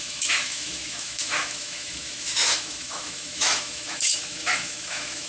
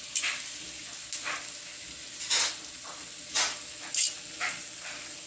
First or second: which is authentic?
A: second